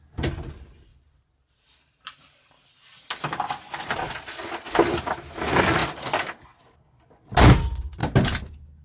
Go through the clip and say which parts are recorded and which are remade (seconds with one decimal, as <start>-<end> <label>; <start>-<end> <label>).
0.0-0.9 recorded; 0.9-4.6 remade; 4.6-5.8 recorded; 5.8-6.8 remade; 6.8-8.8 recorded